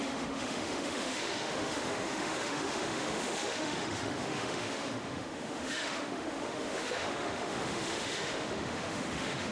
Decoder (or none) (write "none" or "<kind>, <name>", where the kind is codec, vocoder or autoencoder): autoencoder, DAC-VAE